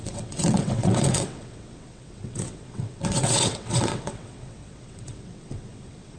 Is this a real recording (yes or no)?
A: no